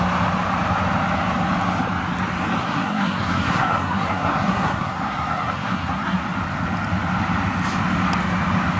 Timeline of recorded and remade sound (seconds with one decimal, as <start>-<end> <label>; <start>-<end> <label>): 0.0-2.6 recorded; 2.6-6.2 remade; 6.2-8.8 recorded